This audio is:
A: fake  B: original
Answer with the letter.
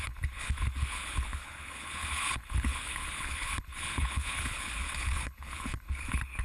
A